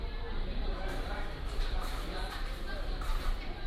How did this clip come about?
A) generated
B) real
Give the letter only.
A